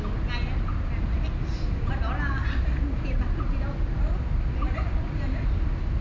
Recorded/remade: recorded